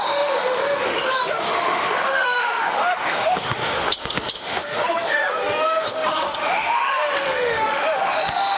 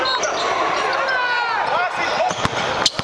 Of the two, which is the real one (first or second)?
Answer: second